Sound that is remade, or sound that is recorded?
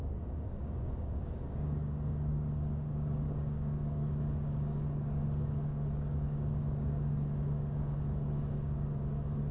remade